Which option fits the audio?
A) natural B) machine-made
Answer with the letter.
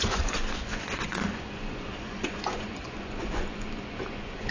B